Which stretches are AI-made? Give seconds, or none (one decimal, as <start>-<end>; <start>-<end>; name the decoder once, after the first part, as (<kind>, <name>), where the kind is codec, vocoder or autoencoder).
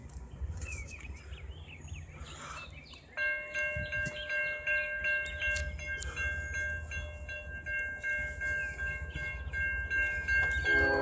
0.0-1.2 (vocoder, Vocos)